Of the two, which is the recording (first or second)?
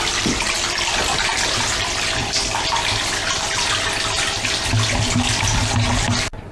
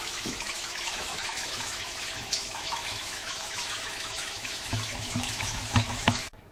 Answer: first